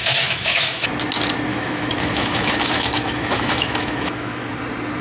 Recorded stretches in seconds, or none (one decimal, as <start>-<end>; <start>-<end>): 0.9-1.5; 4.5-5.0